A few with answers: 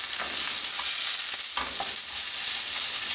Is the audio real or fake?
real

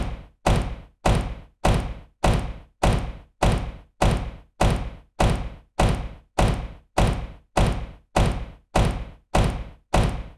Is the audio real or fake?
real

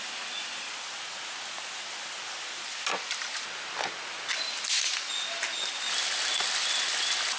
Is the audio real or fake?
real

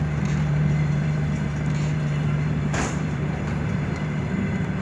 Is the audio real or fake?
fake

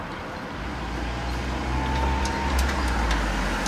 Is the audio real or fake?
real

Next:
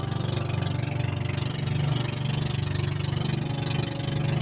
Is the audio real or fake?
real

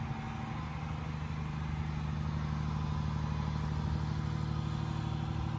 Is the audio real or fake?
real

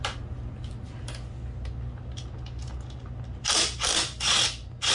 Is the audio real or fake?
real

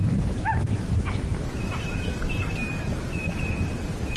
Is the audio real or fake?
real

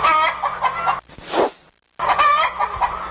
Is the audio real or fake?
real